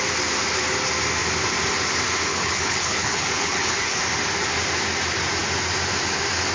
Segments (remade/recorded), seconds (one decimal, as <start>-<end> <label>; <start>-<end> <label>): 0.0-2.3 recorded; 2.3-4.0 remade; 4.0-6.5 recorded